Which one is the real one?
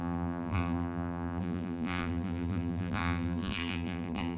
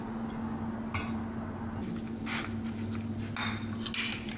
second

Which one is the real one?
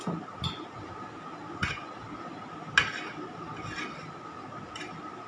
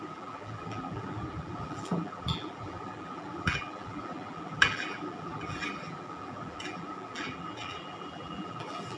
first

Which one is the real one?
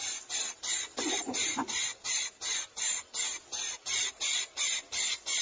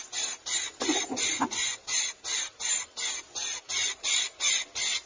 second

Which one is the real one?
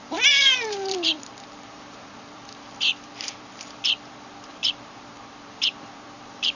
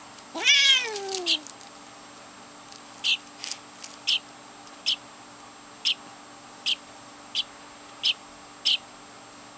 second